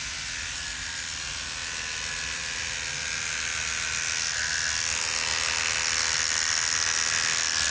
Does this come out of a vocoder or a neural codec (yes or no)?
no